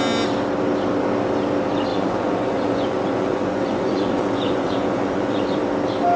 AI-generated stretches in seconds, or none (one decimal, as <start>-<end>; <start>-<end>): 1.9-5.6